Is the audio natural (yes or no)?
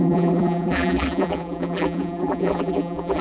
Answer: no